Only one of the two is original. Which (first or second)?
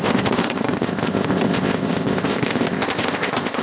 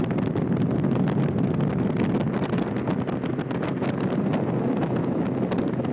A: second